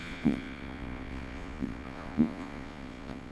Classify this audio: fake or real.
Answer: fake